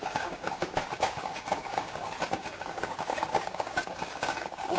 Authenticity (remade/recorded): remade